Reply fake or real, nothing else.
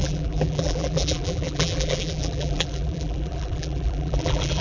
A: fake